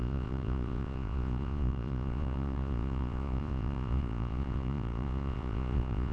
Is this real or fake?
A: fake